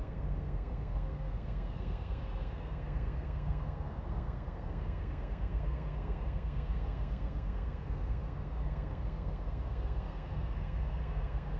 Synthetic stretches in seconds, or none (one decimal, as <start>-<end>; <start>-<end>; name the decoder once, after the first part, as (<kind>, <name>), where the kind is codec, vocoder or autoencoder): 0.0-11.6 (codec, SNAC)